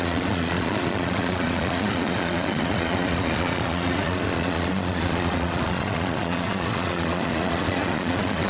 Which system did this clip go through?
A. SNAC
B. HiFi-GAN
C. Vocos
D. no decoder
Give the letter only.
C